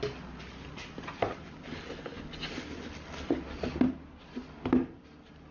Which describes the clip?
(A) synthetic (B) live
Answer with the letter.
B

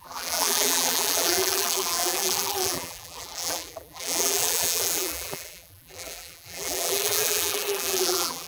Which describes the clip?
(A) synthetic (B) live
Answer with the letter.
A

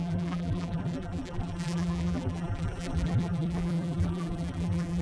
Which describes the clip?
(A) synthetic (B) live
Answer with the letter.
A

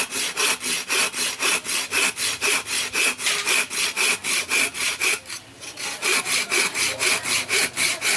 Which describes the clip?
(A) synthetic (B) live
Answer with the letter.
B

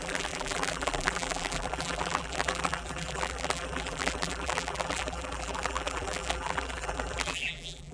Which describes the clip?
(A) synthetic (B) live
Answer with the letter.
A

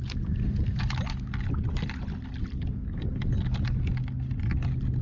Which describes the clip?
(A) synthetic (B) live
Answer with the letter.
B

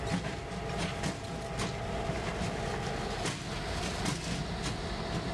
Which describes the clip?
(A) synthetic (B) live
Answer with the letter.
B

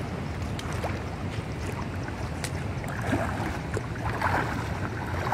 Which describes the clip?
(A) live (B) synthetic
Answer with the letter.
A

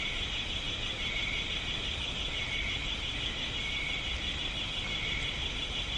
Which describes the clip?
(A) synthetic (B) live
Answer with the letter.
B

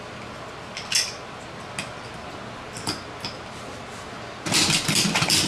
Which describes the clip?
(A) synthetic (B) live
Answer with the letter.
B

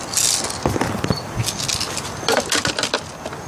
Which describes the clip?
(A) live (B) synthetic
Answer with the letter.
A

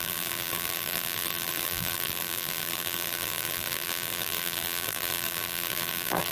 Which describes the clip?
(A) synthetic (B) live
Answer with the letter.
A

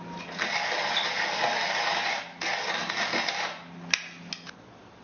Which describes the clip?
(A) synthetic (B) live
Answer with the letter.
B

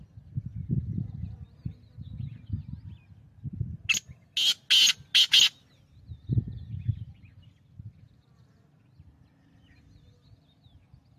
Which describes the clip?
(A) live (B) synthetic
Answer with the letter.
A